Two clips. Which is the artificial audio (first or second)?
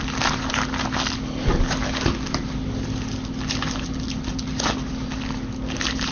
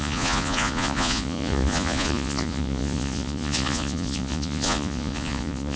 second